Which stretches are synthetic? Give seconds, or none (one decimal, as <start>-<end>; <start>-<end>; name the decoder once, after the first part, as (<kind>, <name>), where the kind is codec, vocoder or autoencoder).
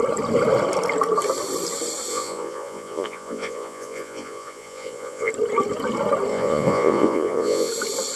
2.1-5.3 (vocoder, Vocos); 6.3-7.7